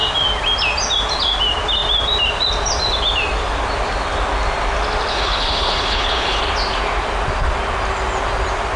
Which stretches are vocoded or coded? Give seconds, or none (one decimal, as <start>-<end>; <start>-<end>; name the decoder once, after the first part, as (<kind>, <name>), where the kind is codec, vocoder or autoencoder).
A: 5.1-6.4 (codec, HILCodec)